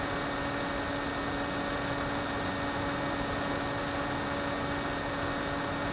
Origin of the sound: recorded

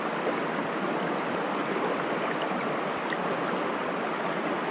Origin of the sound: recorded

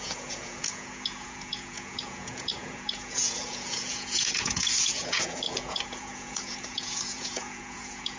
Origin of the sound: remade